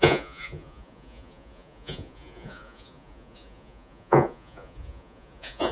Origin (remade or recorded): remade